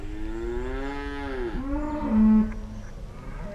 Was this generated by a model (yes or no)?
no